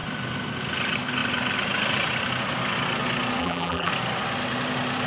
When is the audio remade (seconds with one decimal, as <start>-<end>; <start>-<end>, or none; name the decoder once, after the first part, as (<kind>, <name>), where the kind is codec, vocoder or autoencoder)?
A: 3.4-3.9 (vocoder, BigVGAN v2)